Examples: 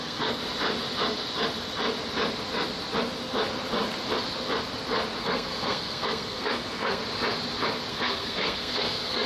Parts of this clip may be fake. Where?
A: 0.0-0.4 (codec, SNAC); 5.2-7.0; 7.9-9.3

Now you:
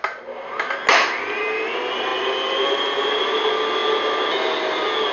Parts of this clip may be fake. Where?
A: 0.9-1.4 (vocoder, BigVGAN v2); 2.1-2.8

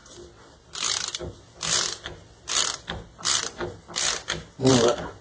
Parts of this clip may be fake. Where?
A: 1.2-2.2 (vocoder, BigVGAN v2); 4.7-5.2